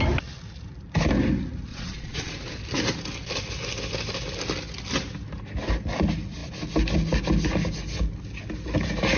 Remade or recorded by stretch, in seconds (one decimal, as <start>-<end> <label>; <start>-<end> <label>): 0.0-1.7 recorded; 1.7-2.3 remade; 2.3-9.2 recorded